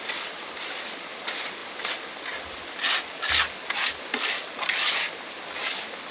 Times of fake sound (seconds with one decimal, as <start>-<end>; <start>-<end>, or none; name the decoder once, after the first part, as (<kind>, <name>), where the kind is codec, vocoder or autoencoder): none